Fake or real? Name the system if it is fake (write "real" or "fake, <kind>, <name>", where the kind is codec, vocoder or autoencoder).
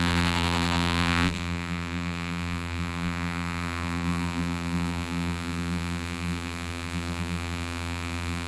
fake, vocoder, BigVGAN v2